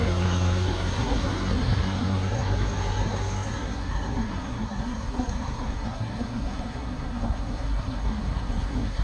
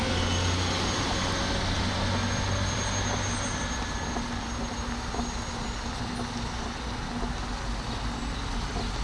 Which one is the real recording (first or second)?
second